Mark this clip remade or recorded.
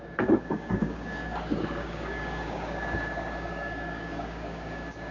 remade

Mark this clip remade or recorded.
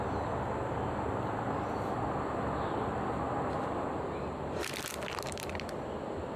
recorded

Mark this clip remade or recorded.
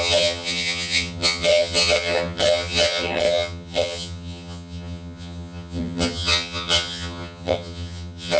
remade